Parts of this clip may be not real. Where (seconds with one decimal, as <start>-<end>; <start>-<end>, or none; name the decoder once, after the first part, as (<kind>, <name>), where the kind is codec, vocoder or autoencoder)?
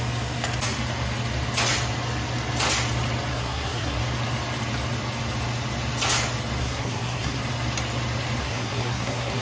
3.3-4.0 (codec, SNAC); 6.6-7.4; 8.4-9.4